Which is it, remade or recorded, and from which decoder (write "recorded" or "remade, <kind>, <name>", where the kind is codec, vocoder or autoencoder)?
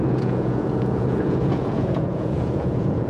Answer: remade, vocoder, Vocos